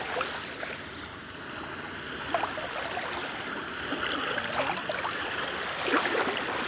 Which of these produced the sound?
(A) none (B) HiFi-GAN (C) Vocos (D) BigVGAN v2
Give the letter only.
A